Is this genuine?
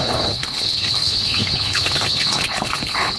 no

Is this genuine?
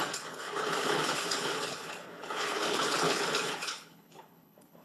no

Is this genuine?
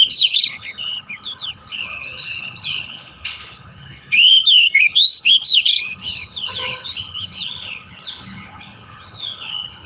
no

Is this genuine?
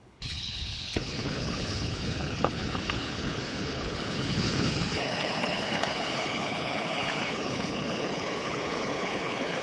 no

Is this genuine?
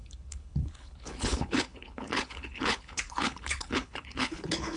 no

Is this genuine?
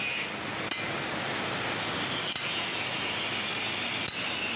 yes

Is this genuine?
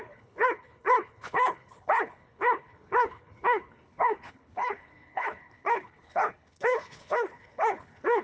no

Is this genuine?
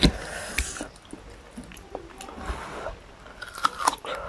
yes